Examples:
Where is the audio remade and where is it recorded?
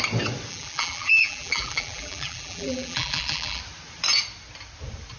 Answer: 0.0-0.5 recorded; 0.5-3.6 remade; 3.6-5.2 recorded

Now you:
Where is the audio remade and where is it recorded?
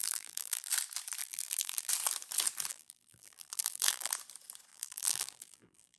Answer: 0.0-0.7 remade; 0.7-1.2 recorded; 1.2-1.9 remade; 1.9-2.7 recorded; 2.7-4.1 remade; 4.1-4.7 recorded; 4.7-6.0 remade